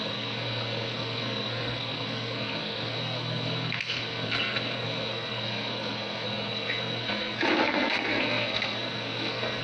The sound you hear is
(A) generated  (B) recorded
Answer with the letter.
A